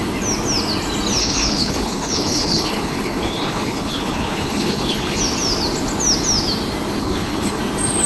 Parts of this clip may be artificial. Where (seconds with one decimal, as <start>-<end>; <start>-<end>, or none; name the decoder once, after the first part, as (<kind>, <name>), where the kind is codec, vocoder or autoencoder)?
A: 1.2-5.2 (codec, HILCodec); 7.0-7.6